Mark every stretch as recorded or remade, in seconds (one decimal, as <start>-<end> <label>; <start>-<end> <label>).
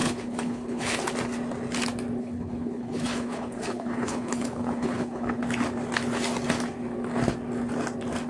0.0-1.0 remade; 1.0-2.2 recorded; 2.2-5.4 remade; 5.4-8.3 recorded